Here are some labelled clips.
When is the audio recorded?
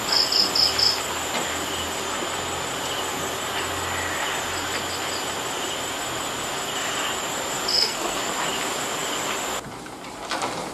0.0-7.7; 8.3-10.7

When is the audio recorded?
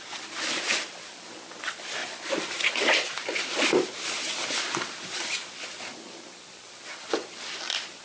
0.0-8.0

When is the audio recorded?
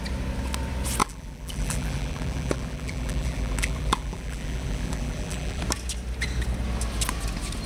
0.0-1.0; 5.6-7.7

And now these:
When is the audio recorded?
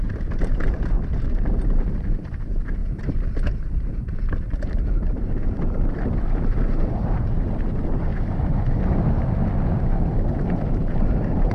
2.8-3.9; 8.1-10.3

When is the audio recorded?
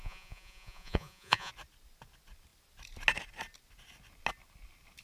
1.5-5.0